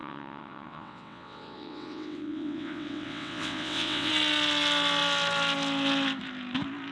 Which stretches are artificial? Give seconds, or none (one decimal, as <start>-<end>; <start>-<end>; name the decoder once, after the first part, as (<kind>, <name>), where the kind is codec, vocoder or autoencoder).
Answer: 0.0-4.1 (vocoder, WaveNeXt)